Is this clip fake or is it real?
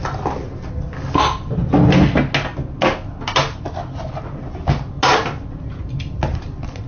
real